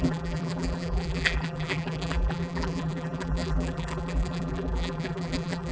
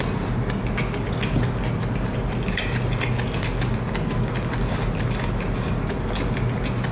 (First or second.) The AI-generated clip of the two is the first